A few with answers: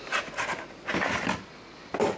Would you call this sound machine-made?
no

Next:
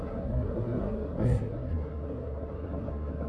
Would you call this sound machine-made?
yes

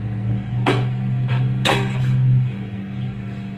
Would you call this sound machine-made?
yes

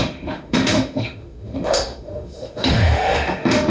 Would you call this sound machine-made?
yes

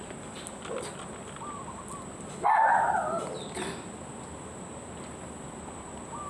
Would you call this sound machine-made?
no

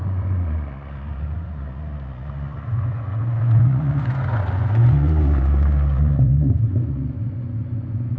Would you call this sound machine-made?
yes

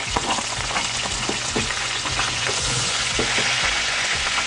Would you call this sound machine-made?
yes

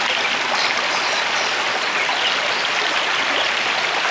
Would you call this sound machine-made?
no